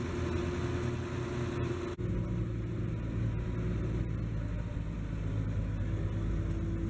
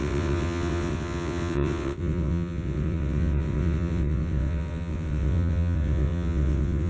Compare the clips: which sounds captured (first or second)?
first